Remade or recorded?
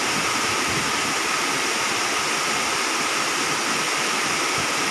recorded